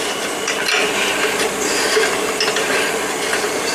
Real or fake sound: real